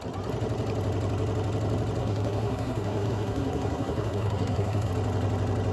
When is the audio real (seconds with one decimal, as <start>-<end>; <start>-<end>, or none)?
0.0-2.0; 4.9-5.7